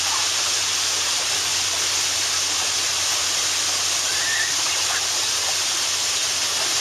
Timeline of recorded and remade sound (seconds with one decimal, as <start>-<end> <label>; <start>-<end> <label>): 0.0-1.5 remade; 1.5-4.4 recorded; 4.4-6.2 remade; 6.2-6.8 recorded